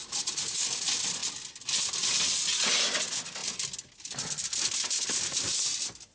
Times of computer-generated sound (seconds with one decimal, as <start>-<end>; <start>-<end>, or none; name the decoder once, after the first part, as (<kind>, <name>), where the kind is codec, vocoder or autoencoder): 0.0-0.6 (vocoder, Vocos)